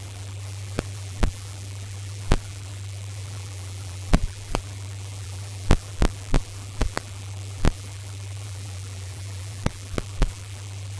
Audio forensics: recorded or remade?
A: remade